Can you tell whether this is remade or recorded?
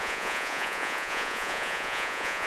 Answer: remade